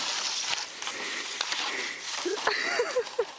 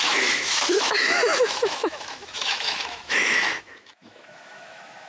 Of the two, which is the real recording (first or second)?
first